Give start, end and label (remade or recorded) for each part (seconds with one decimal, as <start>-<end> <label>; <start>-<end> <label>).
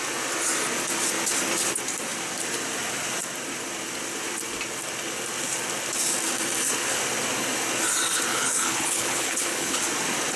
0.0-8.3 recorded; 8.3-9.8 remade; 9.8-10.4 recorded